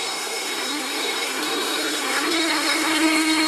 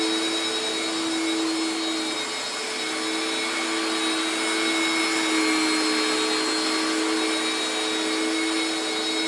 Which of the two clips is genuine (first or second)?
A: second